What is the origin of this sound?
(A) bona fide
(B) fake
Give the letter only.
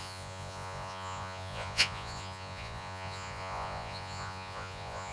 B